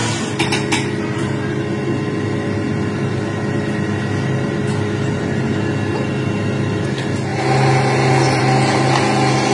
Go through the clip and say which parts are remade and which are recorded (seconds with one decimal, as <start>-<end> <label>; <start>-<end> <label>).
0.0-9.5 recorded